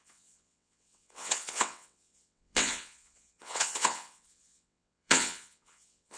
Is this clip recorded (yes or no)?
no